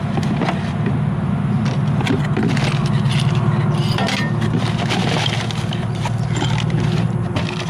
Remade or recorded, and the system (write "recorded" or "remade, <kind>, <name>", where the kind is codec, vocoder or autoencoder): recorded